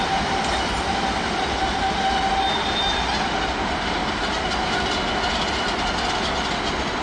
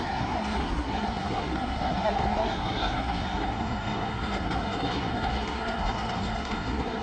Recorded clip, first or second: first